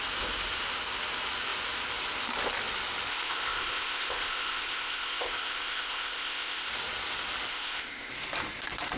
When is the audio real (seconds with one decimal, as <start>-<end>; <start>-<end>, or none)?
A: 0.0-3.1; 6.7-7.5; 8.1-9.0